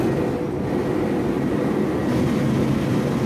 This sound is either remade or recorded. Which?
recorded